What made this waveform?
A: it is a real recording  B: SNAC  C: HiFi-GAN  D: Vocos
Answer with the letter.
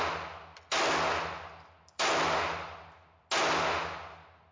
A